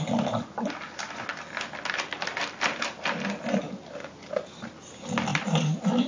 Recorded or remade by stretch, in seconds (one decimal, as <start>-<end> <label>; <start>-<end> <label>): 0.0-6.1 recorded